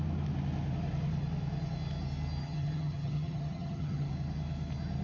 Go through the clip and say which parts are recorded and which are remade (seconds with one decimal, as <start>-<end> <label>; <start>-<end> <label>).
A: 0.0-2.4 recorded; 2.4-4.1 remade; 4.1-5.0 recorded